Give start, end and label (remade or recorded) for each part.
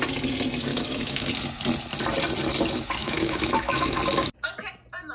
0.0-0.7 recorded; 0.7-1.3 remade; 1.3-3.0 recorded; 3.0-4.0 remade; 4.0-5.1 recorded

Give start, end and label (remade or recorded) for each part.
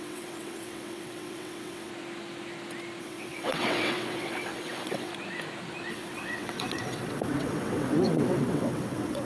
0.0-1.9 remade; 1.9-3.0 recorded; 3.0-5.1 remade; 5.1-5.9 recorded; 5.9-9.3 remade